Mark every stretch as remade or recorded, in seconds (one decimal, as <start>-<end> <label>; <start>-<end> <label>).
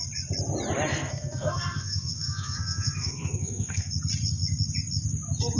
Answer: 0.0-0.9 recorded; 0.9-3.9 remade; 3.9-5.6 recorded